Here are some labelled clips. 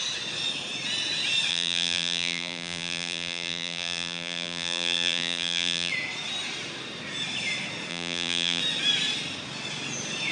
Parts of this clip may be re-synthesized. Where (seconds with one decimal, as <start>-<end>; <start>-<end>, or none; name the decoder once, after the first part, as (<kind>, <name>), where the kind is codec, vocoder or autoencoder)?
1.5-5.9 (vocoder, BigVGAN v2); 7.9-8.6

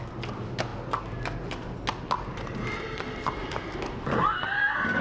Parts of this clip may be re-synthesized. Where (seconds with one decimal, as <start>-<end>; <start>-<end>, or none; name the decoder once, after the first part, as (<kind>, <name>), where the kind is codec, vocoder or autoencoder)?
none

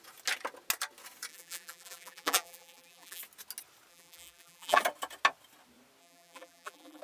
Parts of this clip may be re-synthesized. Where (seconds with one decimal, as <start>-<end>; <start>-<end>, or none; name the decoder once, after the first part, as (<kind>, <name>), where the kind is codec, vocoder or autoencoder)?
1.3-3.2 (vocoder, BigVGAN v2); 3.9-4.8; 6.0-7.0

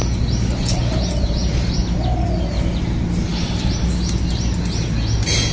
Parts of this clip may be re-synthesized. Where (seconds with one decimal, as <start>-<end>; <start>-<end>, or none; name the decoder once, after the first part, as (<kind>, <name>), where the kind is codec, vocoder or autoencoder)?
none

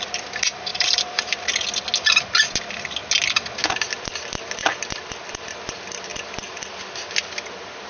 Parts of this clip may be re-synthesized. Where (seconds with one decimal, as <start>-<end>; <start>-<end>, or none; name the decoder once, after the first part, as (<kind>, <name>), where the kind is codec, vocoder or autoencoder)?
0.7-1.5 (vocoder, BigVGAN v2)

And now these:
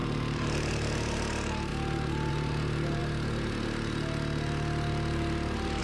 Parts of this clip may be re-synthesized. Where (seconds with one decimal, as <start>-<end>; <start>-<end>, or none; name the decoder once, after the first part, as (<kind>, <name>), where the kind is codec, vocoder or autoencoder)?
0.0-1.7 (vocoder, BigVGAN v2); 2.3-3.0